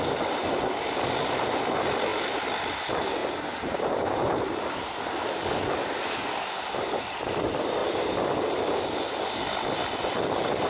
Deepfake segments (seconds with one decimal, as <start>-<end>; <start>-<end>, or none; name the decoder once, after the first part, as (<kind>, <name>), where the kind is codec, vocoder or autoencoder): 0.0-3.2 (vocoder, BigVGAN v2); 7.0-10.7